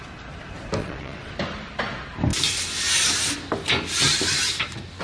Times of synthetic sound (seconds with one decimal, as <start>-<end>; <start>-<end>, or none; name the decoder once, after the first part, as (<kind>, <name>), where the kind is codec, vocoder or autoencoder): 0.8-1.3 (vocoder, WaveNeXt)